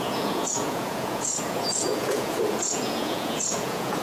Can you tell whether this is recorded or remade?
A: remade